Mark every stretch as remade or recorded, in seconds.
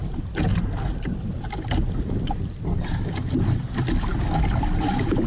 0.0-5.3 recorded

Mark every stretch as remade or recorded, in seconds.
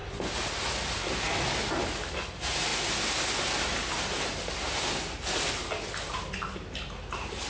0.0-7.5 recorded